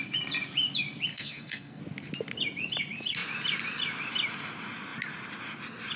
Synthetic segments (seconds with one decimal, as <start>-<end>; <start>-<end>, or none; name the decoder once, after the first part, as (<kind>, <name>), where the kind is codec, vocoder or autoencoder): 1.1-1.8 (codec, SNAC)